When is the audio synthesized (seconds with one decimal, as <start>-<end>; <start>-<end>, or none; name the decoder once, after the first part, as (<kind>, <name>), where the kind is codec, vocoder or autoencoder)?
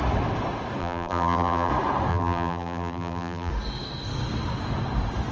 0.8-1.7 (vocoder, BigVGAN v2); 2.1-3.5